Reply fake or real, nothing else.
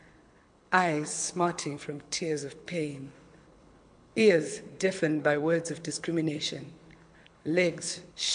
fake